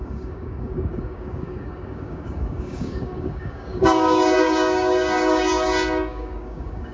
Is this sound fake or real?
fake